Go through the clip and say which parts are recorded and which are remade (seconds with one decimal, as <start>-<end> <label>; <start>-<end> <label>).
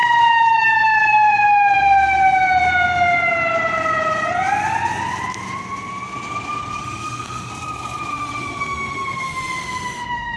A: 0.0-6.8 recorded; 6.8-7.5 remade; 7.5-8.1 recorded; 8.1-10.4 remade